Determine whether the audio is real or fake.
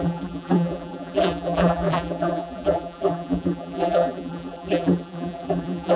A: fake